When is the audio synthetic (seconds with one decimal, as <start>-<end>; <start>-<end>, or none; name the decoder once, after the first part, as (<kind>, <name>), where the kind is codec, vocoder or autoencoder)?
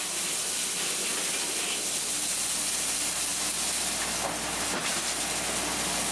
none